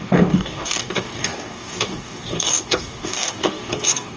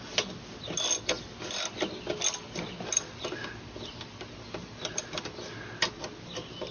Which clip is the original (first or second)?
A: second